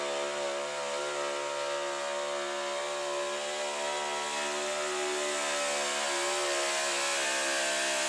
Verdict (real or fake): real